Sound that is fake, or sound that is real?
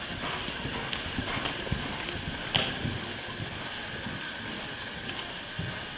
real